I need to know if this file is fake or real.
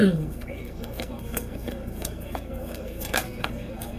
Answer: fake